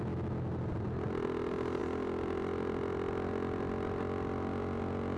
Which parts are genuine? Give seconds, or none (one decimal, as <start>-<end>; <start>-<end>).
0.0-5.2